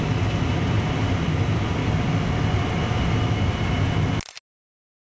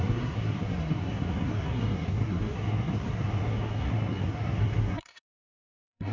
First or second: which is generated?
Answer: second